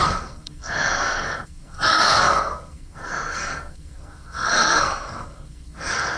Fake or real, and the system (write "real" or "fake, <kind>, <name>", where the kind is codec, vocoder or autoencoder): fake, codec, SNAC